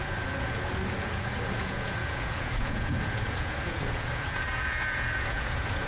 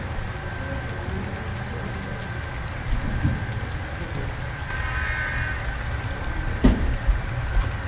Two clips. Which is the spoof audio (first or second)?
first